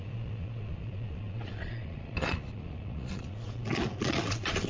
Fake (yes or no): yes